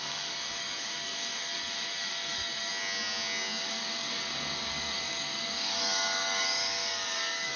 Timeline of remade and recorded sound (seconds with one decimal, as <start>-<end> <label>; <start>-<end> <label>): 0.0-2.7 remade; 2.7-3.6 recorded; 3.6-7.6 remade

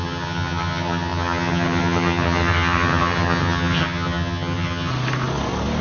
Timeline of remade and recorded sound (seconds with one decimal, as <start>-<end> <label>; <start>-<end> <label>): 0.0-4.9 remade; 4.9-5.8 recorded

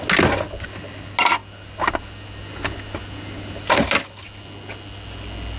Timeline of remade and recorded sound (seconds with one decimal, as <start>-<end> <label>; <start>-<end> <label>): 0.0-5.6 recorded

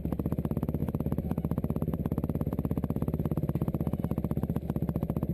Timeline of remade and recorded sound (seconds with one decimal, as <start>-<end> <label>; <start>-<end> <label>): 0.0-0.8 recorded; 0.8-4.0 remade; 4.0-5.3 recorded

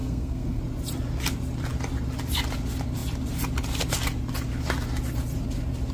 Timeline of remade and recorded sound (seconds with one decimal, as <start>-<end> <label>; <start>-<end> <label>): 0.0-0.6 remade; 0.6-5.9 recorded

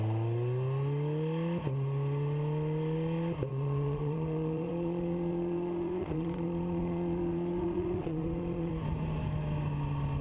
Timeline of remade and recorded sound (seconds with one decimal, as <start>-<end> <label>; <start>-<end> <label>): 0.0-3.5 recorded; 3.5-8.7 remade; 8.7-10.2 recorded

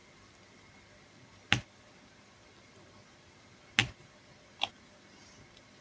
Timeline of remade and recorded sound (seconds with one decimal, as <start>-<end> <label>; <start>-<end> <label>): 0.0-5.8 recorded

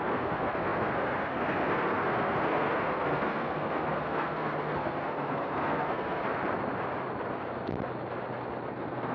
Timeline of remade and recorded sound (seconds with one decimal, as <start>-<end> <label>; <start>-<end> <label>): 0.0-6.2 remade; 6.2-8.7 recorded; 8.7-9.1 remade